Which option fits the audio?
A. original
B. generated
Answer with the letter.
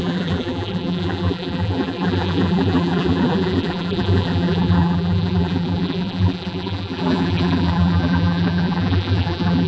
B